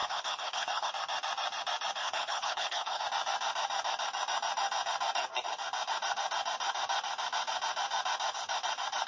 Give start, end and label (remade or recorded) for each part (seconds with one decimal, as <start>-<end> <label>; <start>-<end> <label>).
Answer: 0.0-0.9 remade; 0.9-2.0 recorded; 2.0-3.0 remade; 3.0-9.1 recorded